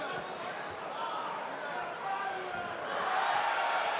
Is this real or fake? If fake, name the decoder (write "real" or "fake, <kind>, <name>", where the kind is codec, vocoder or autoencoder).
real